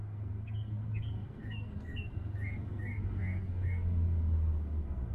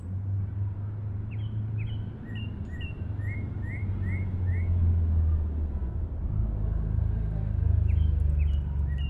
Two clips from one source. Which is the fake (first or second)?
first